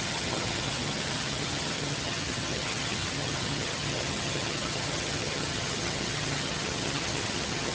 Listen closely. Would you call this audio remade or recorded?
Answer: remade